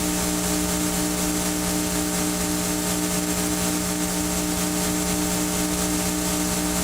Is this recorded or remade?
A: recorded